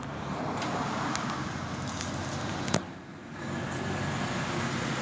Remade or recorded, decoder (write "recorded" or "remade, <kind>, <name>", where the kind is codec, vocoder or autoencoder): recorded